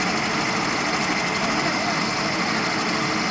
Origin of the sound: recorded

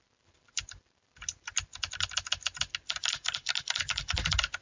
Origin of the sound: recorded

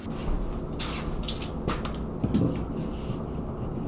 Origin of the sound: recorded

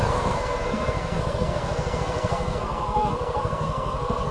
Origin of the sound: remade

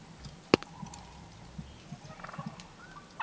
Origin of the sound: recorded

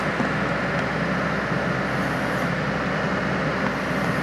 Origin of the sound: recorded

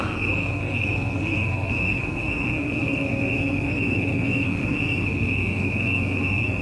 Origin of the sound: remade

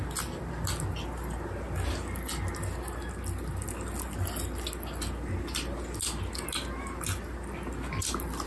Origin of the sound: recorded